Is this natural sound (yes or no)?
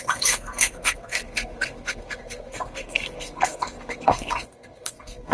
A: no